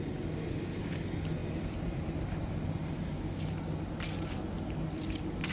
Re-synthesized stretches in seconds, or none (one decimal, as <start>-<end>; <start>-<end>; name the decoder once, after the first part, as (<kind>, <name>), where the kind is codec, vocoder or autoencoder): none